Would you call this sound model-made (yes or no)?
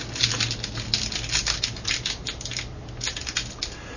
no